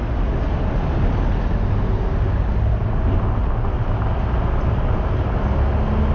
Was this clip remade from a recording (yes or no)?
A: no